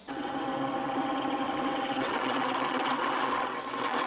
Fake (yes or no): yes